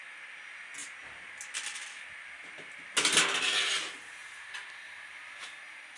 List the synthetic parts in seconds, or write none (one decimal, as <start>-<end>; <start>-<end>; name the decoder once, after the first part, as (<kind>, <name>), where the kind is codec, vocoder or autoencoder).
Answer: none